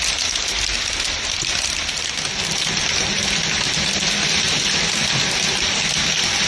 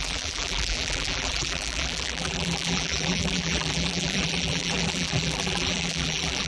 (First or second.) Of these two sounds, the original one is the first